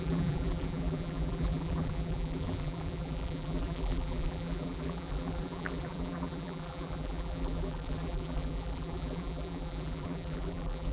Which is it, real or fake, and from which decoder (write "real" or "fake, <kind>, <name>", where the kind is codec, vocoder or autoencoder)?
fake, vocoder, BigVGAN v2